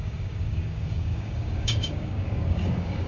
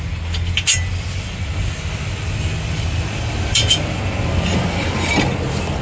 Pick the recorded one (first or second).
second